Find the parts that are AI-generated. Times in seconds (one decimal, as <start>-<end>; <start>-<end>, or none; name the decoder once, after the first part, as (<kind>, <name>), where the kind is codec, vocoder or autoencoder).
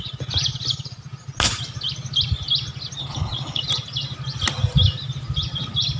3.0-3.6 (codec, HILCodec)